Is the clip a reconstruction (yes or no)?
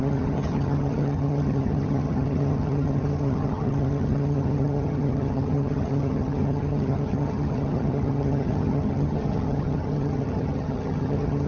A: yes